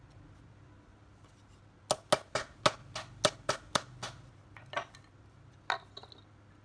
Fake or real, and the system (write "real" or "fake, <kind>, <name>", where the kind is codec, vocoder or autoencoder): real